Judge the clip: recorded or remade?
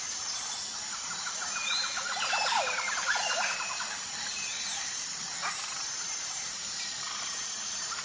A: remade